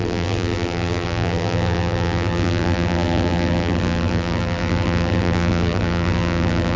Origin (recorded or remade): remade